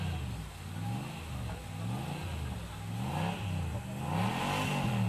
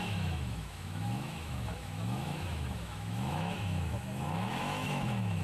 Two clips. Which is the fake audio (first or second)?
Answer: second